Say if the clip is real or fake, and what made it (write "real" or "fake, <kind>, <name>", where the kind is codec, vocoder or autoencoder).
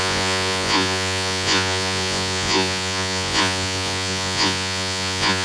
fake, vocoder, Vocos